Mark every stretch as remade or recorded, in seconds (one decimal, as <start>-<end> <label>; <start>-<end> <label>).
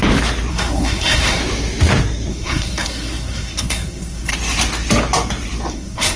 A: 0.0-0.5 recorded; 0.5-1.4 remade; 1.4-2.3 recorded; 2.3-4.3 remade; 4.3-5.7 recorded; 5.7-6.2 remade